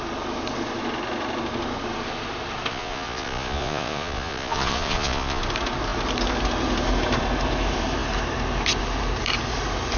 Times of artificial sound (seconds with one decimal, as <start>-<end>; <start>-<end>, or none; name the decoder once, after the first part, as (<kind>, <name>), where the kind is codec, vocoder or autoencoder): 2.7-5.4 (vocoder, Vocos)